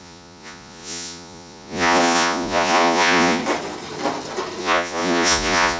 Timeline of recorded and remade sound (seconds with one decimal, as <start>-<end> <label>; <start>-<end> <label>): 0.0-3.4 remade; 3.4-4.6 recorded; 4.6-5.8 remade